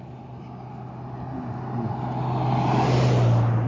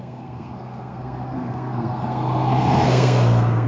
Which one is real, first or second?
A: first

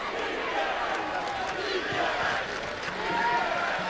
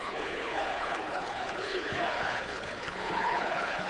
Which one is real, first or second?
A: first